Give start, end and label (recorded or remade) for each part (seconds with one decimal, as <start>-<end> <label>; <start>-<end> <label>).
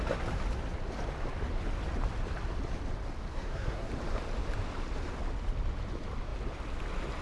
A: 0.0-3.3 recorded; 3.3-3.9 remade; 3.9-7.2 recorded